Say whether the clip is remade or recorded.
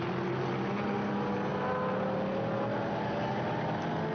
recorded